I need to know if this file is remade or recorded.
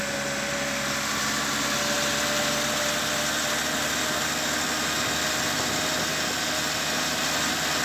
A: recorded